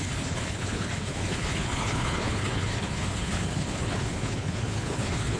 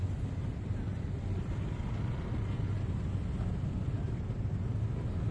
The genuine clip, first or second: second